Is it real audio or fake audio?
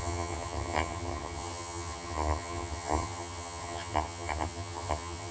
fake